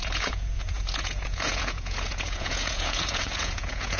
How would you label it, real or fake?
fake